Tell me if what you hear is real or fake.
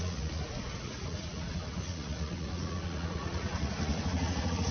fake